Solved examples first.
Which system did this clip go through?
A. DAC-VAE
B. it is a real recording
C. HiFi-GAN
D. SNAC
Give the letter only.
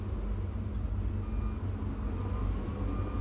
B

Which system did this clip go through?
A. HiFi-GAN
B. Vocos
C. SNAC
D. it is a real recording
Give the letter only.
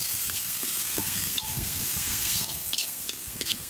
C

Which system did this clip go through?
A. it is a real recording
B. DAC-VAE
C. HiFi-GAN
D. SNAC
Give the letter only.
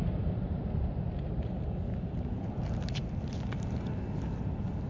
A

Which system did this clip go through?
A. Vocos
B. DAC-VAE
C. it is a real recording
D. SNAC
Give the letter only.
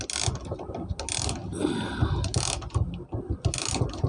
C